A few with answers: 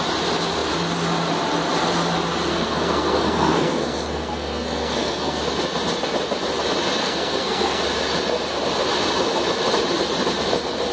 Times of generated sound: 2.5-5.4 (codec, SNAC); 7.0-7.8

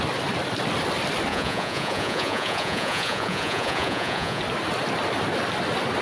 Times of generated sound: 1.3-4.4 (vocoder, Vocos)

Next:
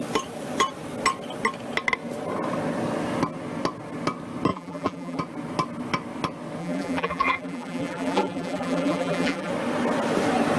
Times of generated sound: 4.5-5.2 (vocoder, BigVGAN v2); 6.6-9.5

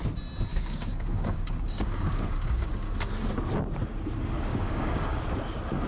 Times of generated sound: 0.5-2.7 (codec, DAC); 4.5-5.2

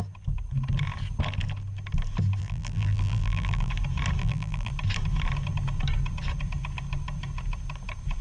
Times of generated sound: 2.4-3.7 (vocoder, BigVGAN v2); 4.2-4.7

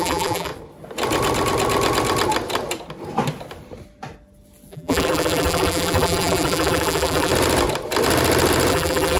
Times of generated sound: 0.0-0.5 (vocoder, BigVGAN v2); 4.7-7.3; 8.7-9.2

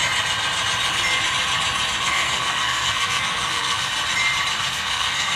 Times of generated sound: 2.0-3.9 (codec, SNAC); 4.6-5.4

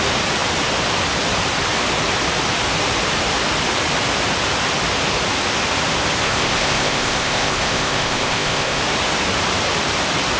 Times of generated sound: 6.2-8.8 (codec, ZipCodec)